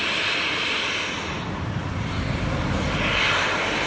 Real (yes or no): yes